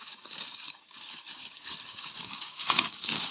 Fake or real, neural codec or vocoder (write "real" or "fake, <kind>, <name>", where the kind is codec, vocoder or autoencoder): fake, codec, DAC